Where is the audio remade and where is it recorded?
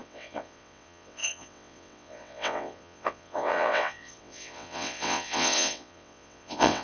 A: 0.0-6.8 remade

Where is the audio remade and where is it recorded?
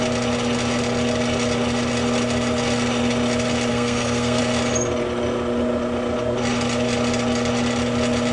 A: 0.0-3.7 recorded; 3.7-4.4 remade; 4.4-8.3 recorded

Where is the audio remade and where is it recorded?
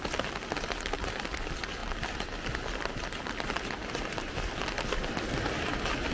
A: 0.0-6.1 recorded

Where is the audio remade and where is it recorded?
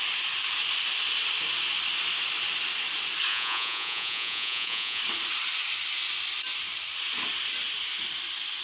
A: 0.0-3.3 recorded; 3.3-5.0 remade; 5.0-8.6 recorded